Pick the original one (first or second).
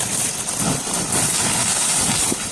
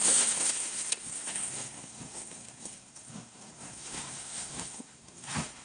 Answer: first